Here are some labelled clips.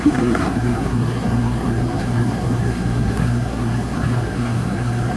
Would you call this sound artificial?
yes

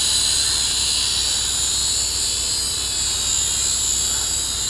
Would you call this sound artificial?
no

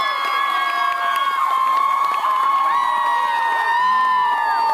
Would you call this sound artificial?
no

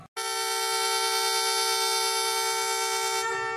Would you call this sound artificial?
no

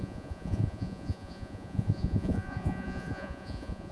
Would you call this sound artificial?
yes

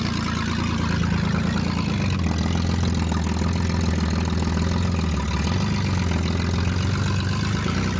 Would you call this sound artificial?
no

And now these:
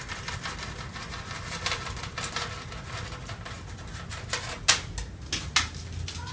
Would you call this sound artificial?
no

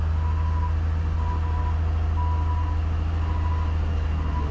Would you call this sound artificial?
no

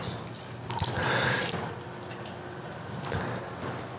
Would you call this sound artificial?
no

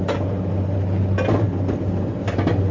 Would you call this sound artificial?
no